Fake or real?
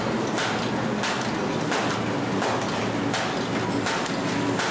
real